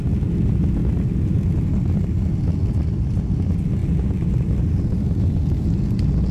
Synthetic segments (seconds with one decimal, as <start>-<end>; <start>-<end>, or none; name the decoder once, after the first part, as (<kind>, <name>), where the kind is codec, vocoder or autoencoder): 2.6-3.3 (vocoder, BigVGAN v2)